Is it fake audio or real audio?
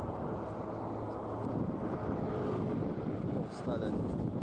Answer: real